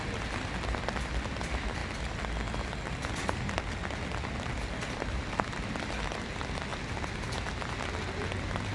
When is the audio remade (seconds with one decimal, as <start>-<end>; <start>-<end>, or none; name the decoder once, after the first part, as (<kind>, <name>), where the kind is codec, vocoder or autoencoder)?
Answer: none